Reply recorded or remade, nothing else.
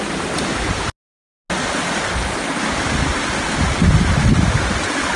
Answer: recorded